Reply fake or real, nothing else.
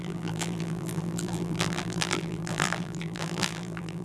fake